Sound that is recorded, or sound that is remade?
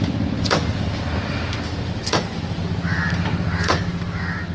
recorded